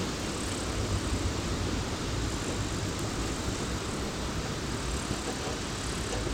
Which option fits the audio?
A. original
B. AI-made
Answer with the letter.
A